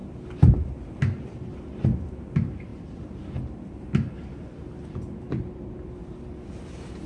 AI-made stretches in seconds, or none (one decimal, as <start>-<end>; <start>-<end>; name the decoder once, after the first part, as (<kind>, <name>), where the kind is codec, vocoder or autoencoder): none